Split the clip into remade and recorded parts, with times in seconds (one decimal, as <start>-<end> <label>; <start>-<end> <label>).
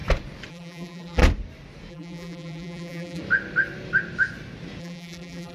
0.0-0.5 recorded; 0.5-1.2 remade; 1.2-1.9 recorded; 1.9-3.2 remade; 3.2-4.8 recorded; 4.8-5.5 remade